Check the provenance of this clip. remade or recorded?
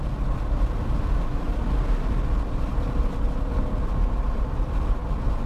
recorded